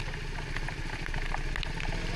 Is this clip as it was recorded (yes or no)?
yes